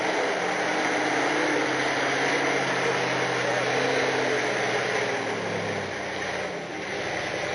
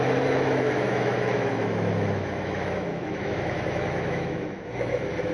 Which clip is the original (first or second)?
first